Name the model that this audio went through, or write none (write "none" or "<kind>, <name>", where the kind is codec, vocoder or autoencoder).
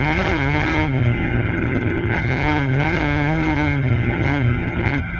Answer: vocoder, HiFi-GAN